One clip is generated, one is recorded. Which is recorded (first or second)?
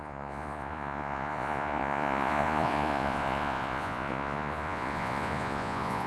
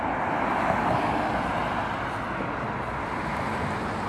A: second